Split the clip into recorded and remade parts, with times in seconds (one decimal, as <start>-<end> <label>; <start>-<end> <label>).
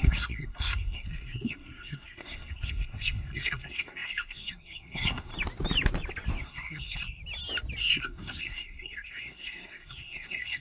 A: 0.0-5.3 remade; 5.3-6.4 recorded; 6.4-7.2 remade; 7.2-7.8 recorded; 7.8-10.6 remade